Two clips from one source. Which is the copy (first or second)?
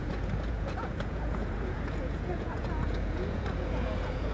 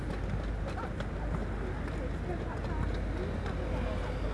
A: first